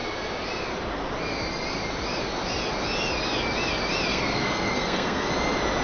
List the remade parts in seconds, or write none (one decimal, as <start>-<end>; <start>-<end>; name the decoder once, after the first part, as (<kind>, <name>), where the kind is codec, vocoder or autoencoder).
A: 4.1-5.3 (codec, SNAC)